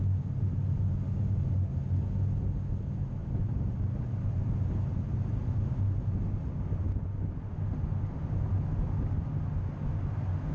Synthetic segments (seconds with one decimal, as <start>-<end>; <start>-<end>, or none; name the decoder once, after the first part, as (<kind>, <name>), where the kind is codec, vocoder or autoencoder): 3.2-4.3 (vocoder, BigVGAN v2)